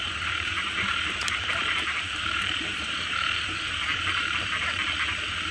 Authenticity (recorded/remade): remade